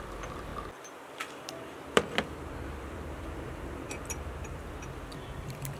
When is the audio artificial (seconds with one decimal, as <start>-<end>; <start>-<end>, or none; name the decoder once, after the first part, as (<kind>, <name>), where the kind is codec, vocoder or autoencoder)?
0.0-5.8 (vocoder, BigVGAN v2)